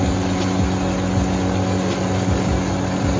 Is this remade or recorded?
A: recorded